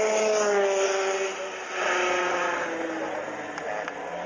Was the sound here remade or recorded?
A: recorded